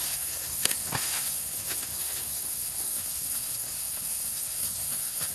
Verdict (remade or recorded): remade